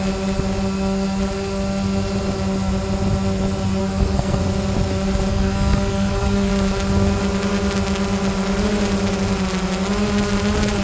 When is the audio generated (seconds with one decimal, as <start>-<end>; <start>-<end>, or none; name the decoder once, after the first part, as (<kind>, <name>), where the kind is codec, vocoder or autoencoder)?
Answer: 3.8-4.4 (codec, SNAC); 5.3-6.5

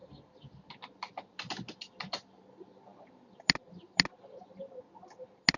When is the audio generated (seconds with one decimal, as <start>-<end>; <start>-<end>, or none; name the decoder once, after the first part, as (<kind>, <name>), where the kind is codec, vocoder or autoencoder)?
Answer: none

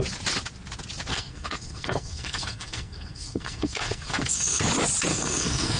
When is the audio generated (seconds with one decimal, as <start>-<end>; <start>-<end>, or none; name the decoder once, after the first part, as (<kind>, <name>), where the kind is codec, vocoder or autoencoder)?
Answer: 1.1-4.6 (codec, SNAC); 5.1-5.8

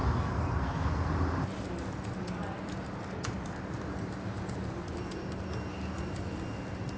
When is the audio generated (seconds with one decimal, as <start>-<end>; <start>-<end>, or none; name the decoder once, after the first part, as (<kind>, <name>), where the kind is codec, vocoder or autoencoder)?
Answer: 0.0-1.1 (codec, SNAC)

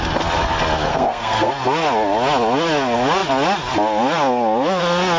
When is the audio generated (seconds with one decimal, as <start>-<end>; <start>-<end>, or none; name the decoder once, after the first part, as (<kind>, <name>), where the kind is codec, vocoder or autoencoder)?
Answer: 0.9-1.5 (codec, SNAC)

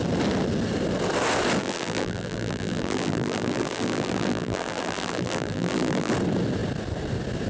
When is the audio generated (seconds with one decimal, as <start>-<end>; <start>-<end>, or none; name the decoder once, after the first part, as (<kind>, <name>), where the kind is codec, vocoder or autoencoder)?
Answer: 1.6-6.1 (vocoder, BigVGAN v2)